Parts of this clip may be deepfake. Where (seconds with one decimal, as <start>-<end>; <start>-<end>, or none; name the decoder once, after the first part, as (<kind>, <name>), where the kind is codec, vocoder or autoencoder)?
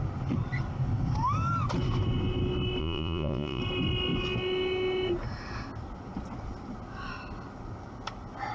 2.8-3.6 (vocoder, Vocos)